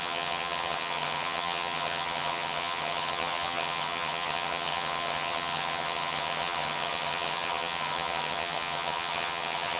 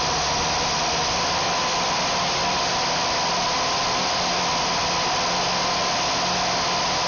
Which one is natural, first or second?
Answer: second